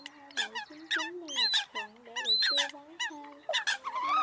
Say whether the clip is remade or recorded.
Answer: recorded